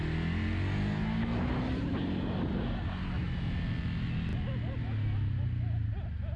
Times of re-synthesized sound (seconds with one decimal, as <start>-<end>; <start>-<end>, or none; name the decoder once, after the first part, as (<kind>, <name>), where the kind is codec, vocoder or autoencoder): none